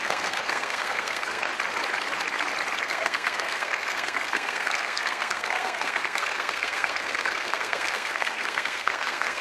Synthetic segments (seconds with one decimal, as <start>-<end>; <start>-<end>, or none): 0.0-1.5; 2.8-9.4